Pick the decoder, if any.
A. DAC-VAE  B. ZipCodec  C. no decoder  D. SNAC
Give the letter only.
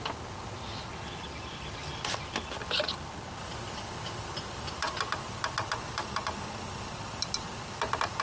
C